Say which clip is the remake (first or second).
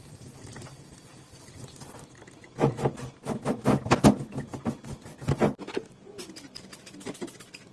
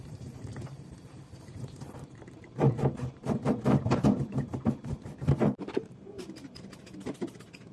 second